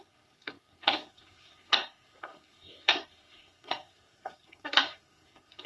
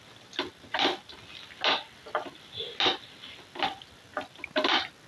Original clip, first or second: second